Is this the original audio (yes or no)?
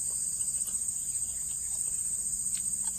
yes